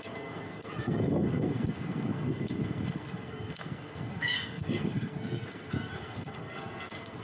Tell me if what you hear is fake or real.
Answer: fake